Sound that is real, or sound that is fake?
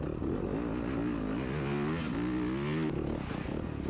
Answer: real